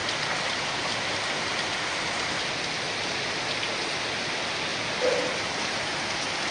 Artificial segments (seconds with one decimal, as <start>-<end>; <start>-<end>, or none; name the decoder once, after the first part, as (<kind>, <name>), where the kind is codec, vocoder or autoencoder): 0.0-2.8 (vocoder, BigVGAN v2); 4.7-6.1